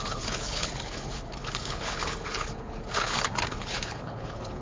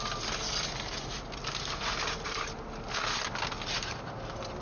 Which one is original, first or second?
second